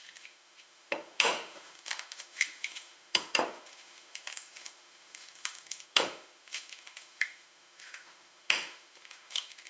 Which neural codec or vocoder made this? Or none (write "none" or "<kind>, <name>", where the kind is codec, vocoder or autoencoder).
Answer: autoencoder, DAC-VAE